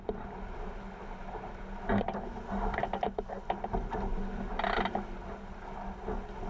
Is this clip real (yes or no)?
yes